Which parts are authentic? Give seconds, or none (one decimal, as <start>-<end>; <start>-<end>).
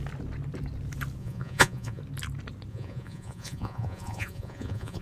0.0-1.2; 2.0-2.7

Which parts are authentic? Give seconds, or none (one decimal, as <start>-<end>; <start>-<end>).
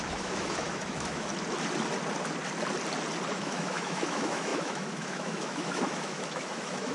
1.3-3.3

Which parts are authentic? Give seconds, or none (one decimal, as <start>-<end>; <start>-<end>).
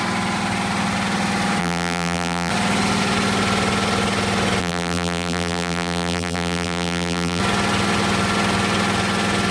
0.0-1.6; 2.5-4.6; 7.4-9.5